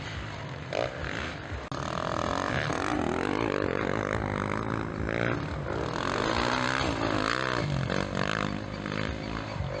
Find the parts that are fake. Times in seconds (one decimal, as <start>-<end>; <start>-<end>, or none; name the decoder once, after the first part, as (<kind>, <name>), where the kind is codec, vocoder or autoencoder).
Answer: none